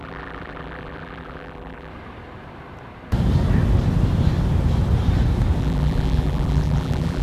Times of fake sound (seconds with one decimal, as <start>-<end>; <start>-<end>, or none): 0.0-1.9; 5.6-7.2